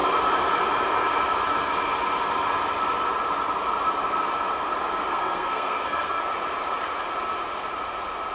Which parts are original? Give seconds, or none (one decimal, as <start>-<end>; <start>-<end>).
0.0-5.1; 6.2-8.3